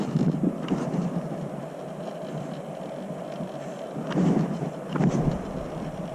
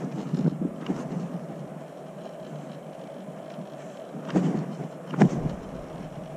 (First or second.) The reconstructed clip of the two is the first